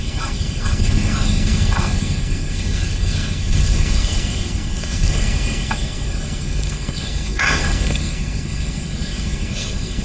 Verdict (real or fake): fake